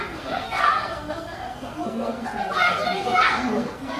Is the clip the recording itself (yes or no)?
no